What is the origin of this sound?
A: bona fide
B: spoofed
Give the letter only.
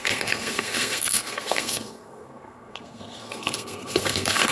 B